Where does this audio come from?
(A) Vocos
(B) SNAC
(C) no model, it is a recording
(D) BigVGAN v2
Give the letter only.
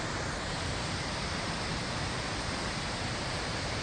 C